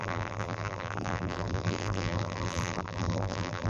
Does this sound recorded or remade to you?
remade